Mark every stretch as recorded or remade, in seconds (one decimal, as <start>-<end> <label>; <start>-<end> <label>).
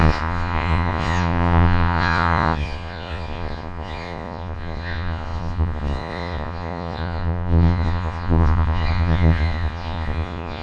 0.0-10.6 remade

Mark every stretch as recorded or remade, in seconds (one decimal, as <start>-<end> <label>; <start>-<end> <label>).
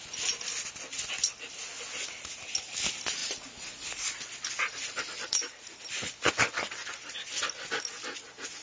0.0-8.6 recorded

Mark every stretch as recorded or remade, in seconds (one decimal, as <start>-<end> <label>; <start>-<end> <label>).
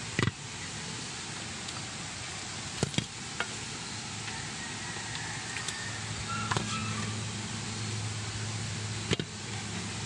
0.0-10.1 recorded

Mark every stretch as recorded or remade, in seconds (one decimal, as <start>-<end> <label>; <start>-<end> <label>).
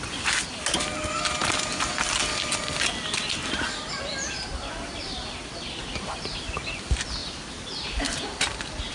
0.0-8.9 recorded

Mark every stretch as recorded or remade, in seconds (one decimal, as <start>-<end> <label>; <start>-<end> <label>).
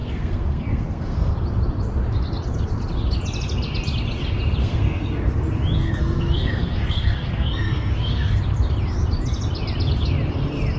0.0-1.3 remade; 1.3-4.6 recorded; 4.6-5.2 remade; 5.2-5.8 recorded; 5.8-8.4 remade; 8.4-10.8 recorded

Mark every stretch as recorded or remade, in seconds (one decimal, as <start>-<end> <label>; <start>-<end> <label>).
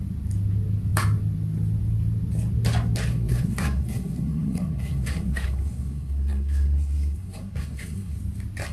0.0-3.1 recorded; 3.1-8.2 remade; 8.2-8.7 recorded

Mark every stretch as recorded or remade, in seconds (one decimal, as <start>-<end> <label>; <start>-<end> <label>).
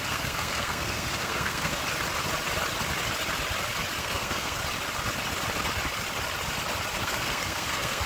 0.0-1.8 remade; 1.8-4.0 recorded; 4.0-4.6 remade; 4.6-7.0 recorded; 7.0-8.1 remade